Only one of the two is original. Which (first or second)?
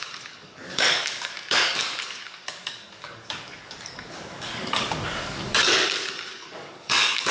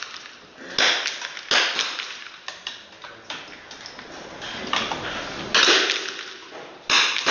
second